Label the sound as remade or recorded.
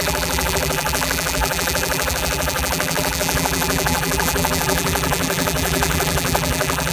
remade